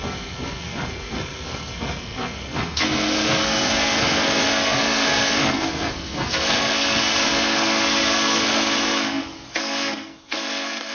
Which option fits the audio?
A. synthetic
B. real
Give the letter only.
A